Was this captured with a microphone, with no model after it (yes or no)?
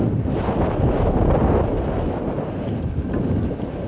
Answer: yes